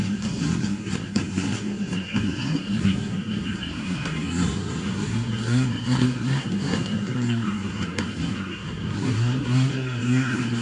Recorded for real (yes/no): no